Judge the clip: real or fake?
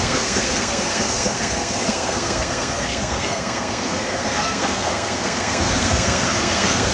fake